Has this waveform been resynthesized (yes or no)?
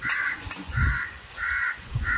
yes